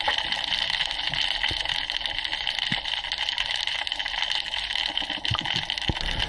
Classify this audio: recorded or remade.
recorded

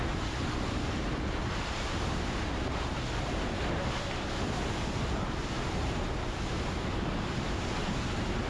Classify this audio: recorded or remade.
recorded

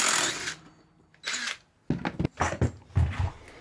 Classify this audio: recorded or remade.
recorded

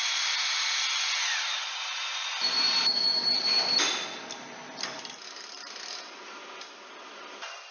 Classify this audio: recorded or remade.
recorded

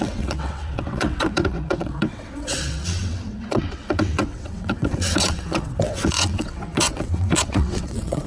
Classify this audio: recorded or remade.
remade